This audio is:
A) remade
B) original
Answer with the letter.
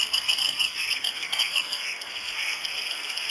A